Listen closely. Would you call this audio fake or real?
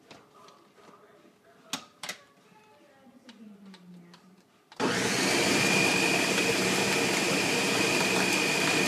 real